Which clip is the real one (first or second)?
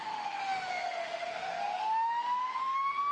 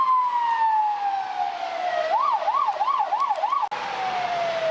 second